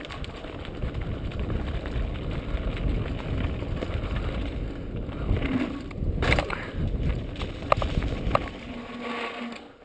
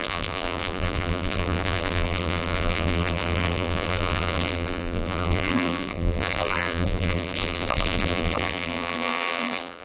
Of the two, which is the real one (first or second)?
first